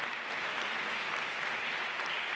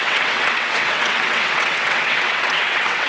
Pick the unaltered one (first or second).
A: first